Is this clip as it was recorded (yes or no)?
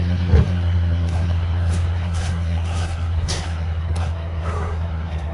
no